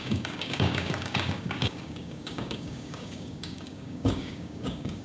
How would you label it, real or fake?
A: fake